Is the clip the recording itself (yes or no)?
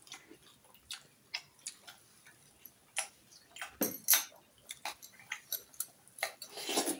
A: yes